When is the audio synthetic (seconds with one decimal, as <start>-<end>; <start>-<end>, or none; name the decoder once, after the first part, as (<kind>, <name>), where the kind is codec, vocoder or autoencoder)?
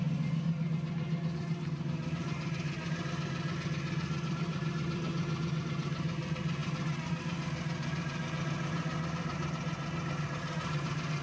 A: none